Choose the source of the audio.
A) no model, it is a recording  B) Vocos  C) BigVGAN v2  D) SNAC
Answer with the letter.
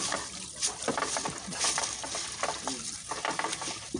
A